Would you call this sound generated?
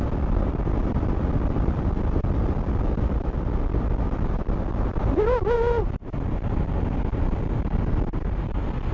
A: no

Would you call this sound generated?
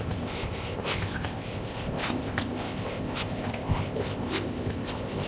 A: yes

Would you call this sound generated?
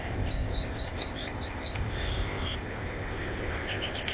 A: yes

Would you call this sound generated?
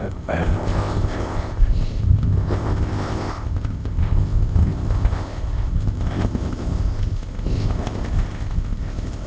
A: yes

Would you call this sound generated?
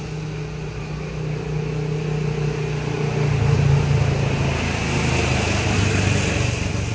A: no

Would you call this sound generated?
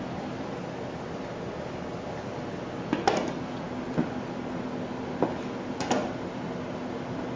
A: no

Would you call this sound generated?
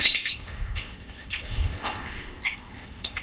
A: yes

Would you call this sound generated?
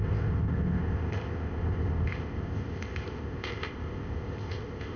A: yes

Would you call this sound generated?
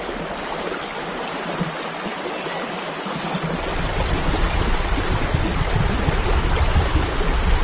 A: no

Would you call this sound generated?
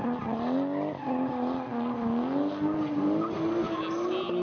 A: no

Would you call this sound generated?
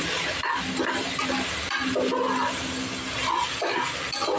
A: no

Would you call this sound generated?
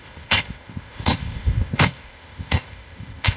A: yes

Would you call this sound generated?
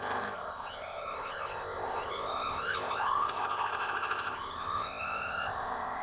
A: yes